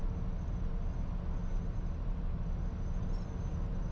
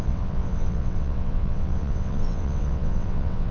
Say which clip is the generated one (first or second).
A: second